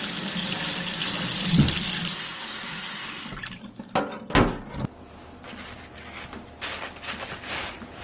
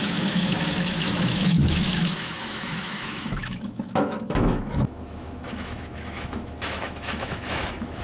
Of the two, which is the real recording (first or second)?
first